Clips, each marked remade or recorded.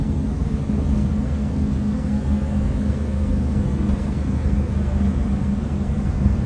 remade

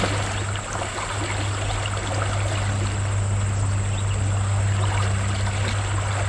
recorded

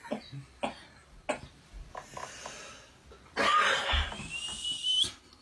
recorded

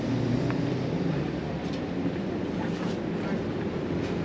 remade